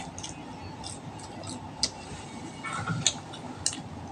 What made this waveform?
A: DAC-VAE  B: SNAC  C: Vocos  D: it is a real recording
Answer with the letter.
D